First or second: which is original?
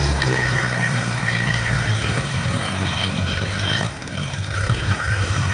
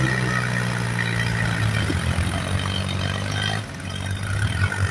second